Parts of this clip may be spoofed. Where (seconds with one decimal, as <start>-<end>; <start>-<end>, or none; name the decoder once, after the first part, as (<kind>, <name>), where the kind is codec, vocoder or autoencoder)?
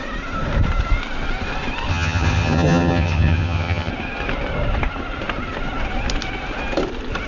1.9-3.9 (vocoder, HiFi-GAN)